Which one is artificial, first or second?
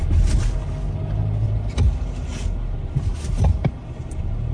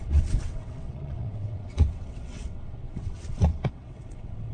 second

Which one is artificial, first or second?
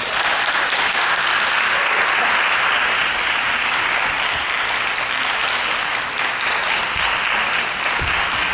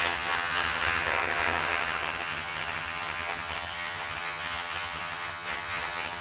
second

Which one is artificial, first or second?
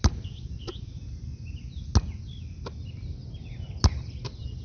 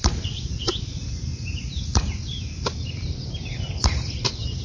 second